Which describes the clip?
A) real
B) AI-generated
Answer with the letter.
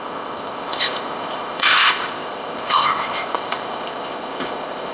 B